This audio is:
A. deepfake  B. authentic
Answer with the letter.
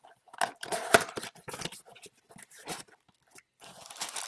B